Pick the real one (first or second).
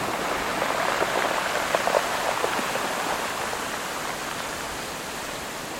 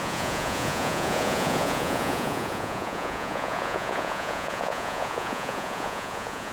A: first